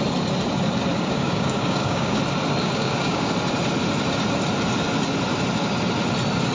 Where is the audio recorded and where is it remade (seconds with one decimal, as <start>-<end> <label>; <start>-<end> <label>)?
0.0-0.9 recorded; 0.9-2.2 remade; 2.2-2.6 recorded; 2.6-3.3 remade; 3.3-6.5 recorded